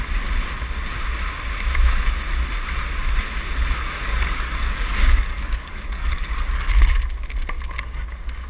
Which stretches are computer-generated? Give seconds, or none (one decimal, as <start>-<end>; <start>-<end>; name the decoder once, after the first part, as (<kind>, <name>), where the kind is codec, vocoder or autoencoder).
4.0-6.8 (codec, DAC)